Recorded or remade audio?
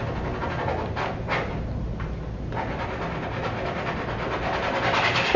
recorded